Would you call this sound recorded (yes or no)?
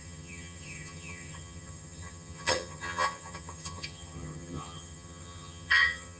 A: no